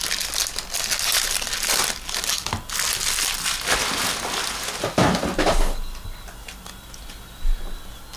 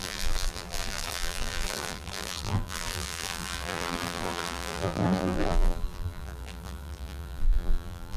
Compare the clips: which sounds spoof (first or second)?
second